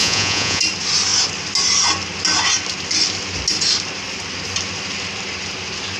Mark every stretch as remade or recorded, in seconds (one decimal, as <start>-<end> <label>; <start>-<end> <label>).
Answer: 0.0-0.6 remade; 0.6-6.0 recorded